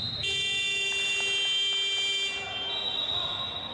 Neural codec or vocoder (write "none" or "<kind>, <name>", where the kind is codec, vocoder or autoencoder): none